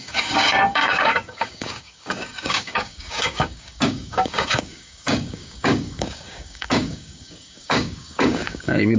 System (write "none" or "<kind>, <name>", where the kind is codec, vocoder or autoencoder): codec, DAC